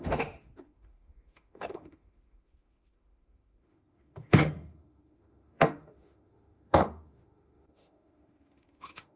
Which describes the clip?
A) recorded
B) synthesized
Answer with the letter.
B